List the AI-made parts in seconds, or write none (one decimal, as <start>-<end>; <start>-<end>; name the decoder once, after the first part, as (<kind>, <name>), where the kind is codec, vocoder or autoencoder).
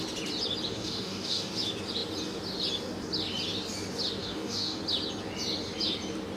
0.7-1.5 (codec, DAC); 4.2-4.8